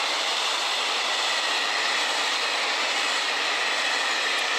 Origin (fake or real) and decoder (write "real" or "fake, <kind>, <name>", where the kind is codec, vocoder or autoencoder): real